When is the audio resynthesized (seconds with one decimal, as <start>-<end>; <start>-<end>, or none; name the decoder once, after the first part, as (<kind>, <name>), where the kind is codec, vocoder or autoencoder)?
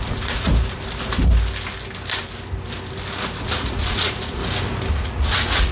0.0-0.5 (vocoder, Vocos); 3.4-4.4; 4.9-5.7